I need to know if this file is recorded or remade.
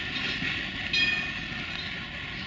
recorded